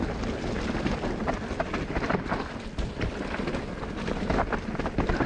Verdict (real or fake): real